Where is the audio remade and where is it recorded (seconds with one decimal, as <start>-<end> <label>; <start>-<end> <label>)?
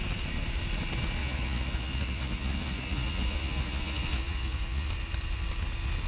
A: 0.0-1.2 recorded; 1.2-4.9 remade; 4.9-6.1 recorded